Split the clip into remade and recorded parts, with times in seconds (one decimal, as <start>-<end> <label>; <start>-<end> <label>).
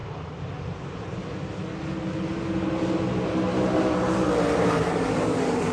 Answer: 0.0-0.6 recorded; 0.6-1.2 remade; 1.2-3.3 recorded; 3.3-5.7 remade